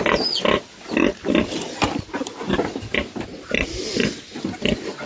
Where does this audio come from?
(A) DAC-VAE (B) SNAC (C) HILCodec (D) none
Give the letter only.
D